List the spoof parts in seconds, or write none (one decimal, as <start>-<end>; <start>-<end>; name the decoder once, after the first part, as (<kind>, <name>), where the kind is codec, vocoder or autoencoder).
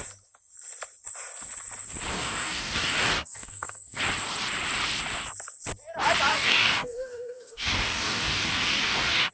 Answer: 2.1-4.0 (codec, DAC); 6.3-9.3